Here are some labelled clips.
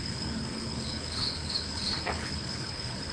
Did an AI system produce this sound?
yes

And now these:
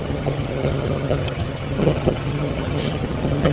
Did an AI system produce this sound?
yes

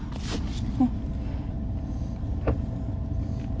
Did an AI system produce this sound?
no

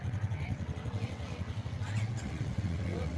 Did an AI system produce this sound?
yes